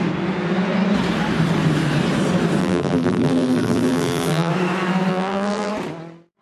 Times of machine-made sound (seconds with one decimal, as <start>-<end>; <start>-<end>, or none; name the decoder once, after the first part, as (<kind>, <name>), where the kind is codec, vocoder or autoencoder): 2.6-4.5 (vocoder, BigVGAN v2); 5.1-5.7